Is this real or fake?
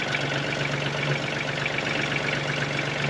real